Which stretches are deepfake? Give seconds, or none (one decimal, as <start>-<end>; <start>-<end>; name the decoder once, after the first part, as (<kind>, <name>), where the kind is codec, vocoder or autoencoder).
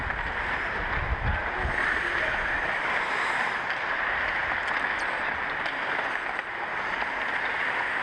none